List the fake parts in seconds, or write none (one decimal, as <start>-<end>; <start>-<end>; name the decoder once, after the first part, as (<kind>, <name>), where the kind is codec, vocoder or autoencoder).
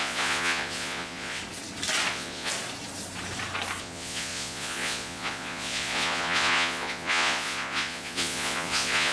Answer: 0.0-1.4 (vocoder, Vocos); 2.1-2.5; 3.8-9.1